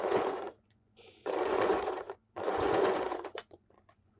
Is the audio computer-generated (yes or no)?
yes